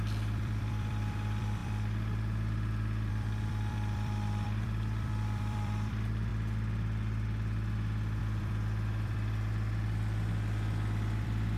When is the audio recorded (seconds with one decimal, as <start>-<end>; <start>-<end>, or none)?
6.3-8.2